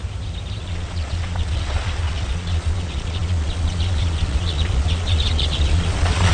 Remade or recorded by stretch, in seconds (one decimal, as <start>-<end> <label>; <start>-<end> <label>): 0.0-0.6 recorded; 0.6-6.3 remade

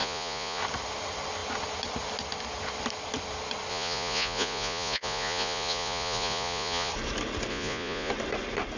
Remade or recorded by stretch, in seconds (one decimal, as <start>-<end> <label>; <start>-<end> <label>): 0.0-0.6 remade; 0.6-3.7 recorded; 3.7-6.9 remade; 6.9-7.5 recorded; 7.5-8.1 remade; 8.1-8.8 recorded

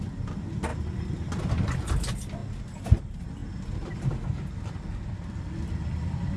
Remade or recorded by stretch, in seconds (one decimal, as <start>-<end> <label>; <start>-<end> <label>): 0.0-6.4 recorded

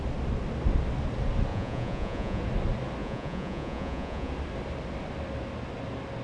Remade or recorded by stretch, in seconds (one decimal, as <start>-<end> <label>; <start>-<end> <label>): 0.0-1.5 recorded; 1.5-2.4 remade; 2.4-3.0 recorded; 3.0-4.3 remade; 4.3-6.2 recorded

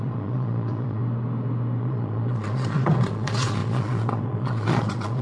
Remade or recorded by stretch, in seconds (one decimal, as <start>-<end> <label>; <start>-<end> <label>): 0.0-1.0 remade; 1.0-1.8 recorded; 1.8-5.2 remade

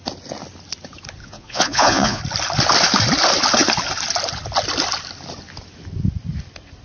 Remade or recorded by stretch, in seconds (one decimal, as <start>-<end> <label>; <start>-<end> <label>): 0.0-1.2 recorded; 1.2-2.2 remade; 2.2-6.8 recorded

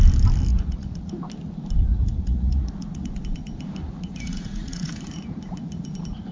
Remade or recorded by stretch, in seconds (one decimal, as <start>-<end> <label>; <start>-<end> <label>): 0.0-0.5 recorded; 0.5-1.1 remade; 1.1-1.9 recorded; 1.9-3.2 remade; 3.2-3.8 recorded; 3.8-4.9 remade; 4.9-6.3 recorded

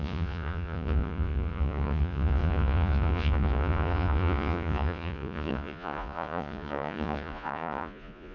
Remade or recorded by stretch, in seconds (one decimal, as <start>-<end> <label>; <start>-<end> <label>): 0.0-8.3 remade